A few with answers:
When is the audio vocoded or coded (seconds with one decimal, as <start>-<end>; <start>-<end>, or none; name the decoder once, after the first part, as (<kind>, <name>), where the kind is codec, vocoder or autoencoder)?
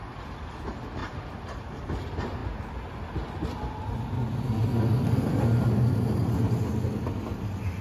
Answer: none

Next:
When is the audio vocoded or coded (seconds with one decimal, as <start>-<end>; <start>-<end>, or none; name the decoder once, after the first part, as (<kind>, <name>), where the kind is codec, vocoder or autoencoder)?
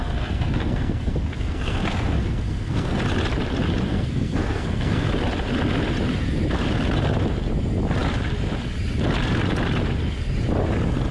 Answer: 0.0-3.0 (codec, SNAC); 3.9-5.1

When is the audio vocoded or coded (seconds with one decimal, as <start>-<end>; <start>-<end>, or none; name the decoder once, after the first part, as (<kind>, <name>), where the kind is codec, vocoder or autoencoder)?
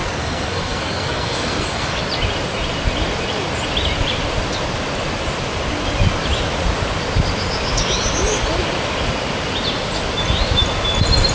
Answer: 0.0-2.0 (codec, SNAC)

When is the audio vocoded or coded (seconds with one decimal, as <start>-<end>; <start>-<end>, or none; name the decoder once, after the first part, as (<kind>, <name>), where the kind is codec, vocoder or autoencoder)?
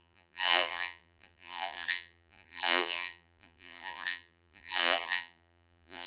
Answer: 0.0-6.1 (vocoder, BigVGAN v2)